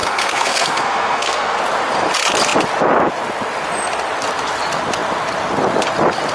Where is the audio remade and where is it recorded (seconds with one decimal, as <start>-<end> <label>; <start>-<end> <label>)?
0.0-1.6 remade; 1.6-6.3 recorded